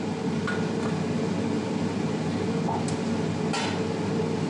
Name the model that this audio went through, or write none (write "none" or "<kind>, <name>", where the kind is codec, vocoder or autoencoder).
none